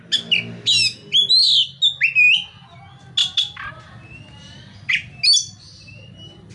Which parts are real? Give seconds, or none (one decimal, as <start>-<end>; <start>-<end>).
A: 0.0-6.5